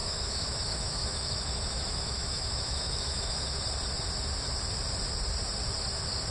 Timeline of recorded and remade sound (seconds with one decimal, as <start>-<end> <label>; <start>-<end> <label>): 0.0-3.6 remade; 3.6-6.3 recorded